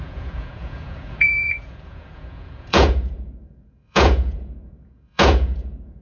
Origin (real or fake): fake